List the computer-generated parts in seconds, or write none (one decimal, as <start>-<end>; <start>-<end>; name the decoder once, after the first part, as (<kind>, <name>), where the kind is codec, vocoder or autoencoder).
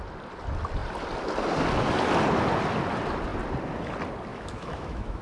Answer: 4.3-5.2 (autoencoder, DAC-VAE)